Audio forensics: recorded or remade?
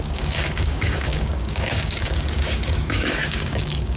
remade